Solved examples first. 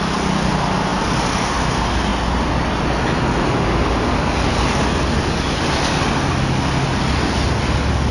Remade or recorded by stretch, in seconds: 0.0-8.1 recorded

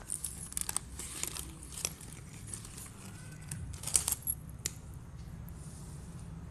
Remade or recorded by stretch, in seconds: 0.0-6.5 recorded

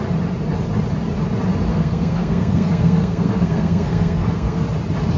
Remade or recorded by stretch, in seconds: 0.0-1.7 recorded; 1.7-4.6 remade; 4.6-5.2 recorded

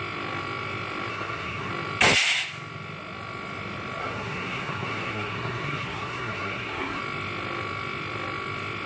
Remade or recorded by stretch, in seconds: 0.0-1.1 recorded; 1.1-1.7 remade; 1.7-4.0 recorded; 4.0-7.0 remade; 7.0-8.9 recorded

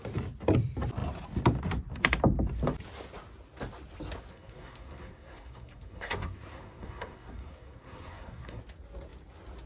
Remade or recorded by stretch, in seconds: 0.0-4.3 recorded; 4.3-8.6 remade; 8.6-9.7 recorded

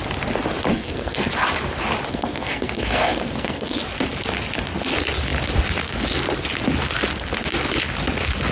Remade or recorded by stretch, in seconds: 0.0-0.7 recorded; 0.7-1.3 remade; 1.3-2.1 recorded; 2.1-3.8 remade; 3.8-8.5 recorded